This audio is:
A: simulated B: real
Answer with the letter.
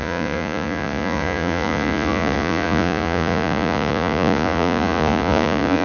A